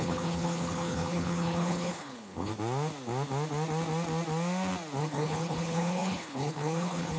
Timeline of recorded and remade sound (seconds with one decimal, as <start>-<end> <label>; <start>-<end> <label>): 0.0-2.5 remade; 2.5-5.0 recorded; 5.0-7.2 remade